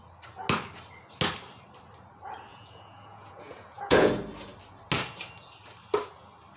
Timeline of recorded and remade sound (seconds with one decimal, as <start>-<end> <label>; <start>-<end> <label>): 0.0-2.5 recorded; 2.5-4.1 remade; 4.1-6.6 recorded